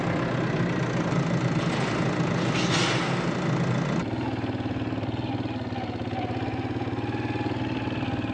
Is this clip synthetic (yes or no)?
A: no